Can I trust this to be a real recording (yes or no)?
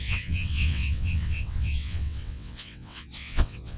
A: no